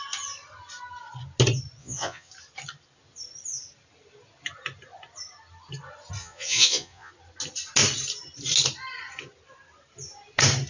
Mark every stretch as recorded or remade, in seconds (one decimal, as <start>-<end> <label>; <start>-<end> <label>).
0.0-1.8 recorded; 1.8-2.3 remade; 2.3-6.2 recorded; 6.2-7.1 remade; 7.1-10.7 recorded